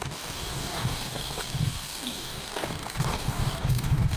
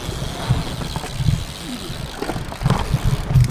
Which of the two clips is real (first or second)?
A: second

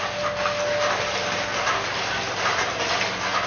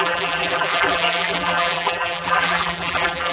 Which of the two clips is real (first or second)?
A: first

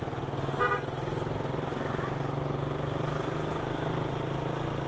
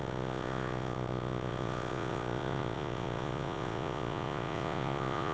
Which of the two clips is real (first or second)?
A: first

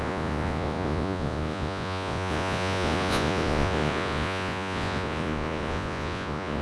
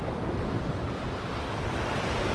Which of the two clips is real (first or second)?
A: second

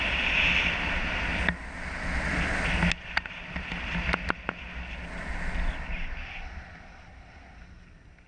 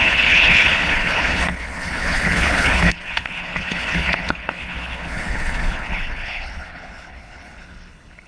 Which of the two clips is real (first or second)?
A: first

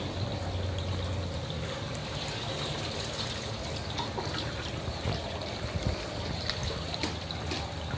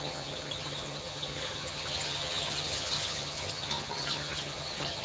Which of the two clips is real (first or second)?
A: first